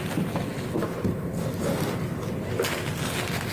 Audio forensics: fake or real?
real